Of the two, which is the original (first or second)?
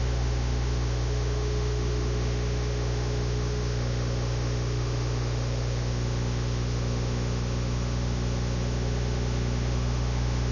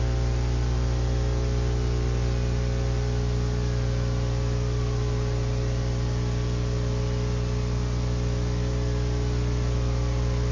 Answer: second